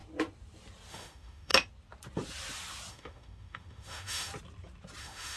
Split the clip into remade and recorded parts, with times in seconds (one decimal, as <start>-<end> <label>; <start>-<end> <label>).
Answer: 0.0-0.9 recorded; 0.9-1.5 remade; 1.5-2.9 recorded; 2.9-4.3 remade; 4.3-5.0 recorded; 5.0-5.4 remade